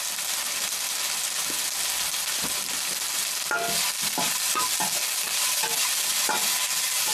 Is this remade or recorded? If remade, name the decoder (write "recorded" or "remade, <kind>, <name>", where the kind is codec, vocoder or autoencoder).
recorded